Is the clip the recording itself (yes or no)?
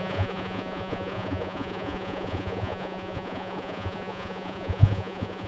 no